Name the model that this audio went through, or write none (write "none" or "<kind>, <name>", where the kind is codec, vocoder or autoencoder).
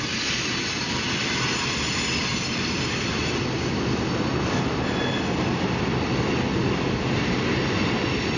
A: none